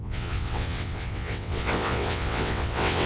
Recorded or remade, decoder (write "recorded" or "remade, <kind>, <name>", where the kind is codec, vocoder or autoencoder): remade, vocoder, WaveNeXt